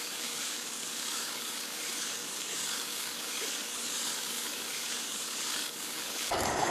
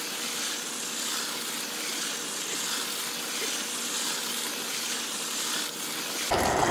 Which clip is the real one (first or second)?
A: second